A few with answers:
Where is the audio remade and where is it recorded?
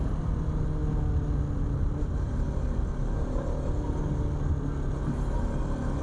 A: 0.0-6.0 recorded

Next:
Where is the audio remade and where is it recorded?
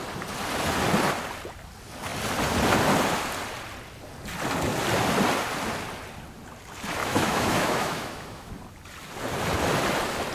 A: 0.0-7.0 recorded; 7.0-8.5 remade; 8.5-10.3 recorded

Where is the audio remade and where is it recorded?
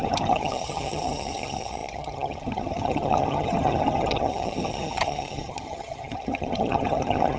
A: 0.0-7.4 remade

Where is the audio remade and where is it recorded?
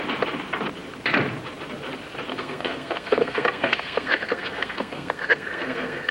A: 0.0-2.3 recorded; 2.3-6.1 remade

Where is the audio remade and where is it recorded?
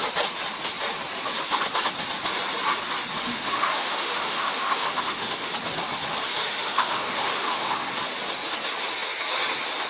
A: 0.0-3.3 recorded; 3.3-5.5 remade; 5.5-6.5 recorded; 6.5-7.9 remade; 7.9-9.9 recorded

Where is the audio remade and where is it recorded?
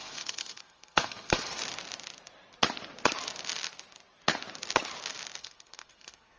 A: 0.0-1.6 remade; 1.6-5.4 recorded; 5.4-6.4 remade